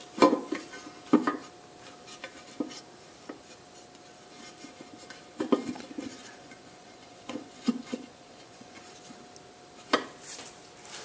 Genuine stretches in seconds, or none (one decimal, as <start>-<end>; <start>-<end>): 0.0-6.1; 8.8-11.0